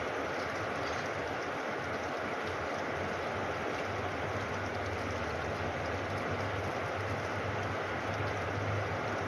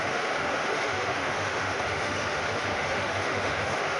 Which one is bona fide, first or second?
first